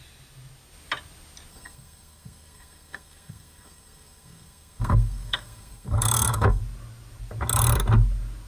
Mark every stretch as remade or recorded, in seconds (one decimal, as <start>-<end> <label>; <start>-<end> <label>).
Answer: 0.0-1.5 recorded; 1.5-6.6 remade; 6.6-8.5 recorded